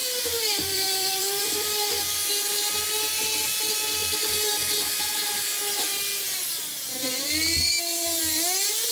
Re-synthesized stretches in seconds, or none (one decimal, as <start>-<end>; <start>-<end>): 0.0-1.4